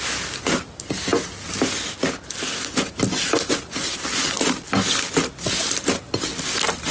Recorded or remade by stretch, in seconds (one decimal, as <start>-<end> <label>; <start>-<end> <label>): 0.0-6.9 recorded